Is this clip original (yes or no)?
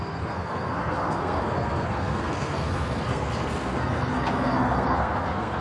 no